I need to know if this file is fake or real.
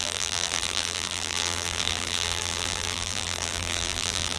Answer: fake